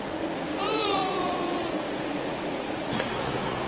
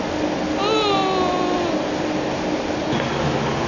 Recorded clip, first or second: second